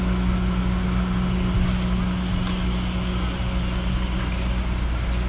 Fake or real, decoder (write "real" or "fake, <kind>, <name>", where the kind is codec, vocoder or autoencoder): real